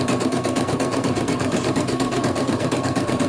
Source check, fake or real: fake